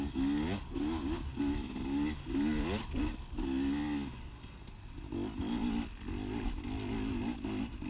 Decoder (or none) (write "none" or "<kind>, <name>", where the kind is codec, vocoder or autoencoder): none